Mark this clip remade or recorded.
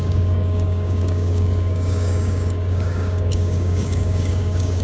remade